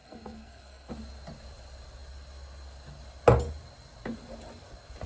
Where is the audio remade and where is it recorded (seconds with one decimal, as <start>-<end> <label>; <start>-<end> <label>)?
0.0-0.9 remade; 0.9-5.1 recorded